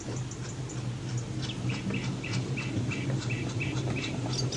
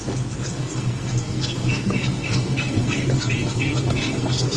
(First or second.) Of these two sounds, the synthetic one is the second